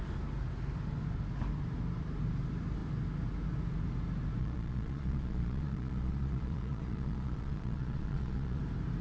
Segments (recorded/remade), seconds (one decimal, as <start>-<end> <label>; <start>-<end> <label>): 0.0-4.4 recorded; 4.4-8.6 remade; 8.6-9.0 recorded